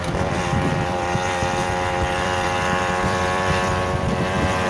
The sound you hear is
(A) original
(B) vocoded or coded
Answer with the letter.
B